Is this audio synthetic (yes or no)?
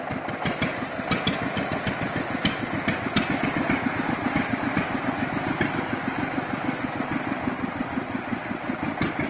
no